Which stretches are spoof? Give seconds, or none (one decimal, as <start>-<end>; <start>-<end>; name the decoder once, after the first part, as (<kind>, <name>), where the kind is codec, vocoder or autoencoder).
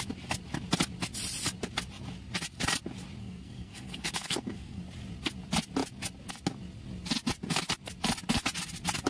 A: 3.2-4.8 (codec, SNAC)